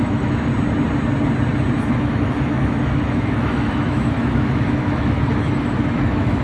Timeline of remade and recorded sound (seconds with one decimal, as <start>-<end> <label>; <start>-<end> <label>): 0.0-0.5 remade; 0.5-1.9 recorded; 1.9-6.4 remade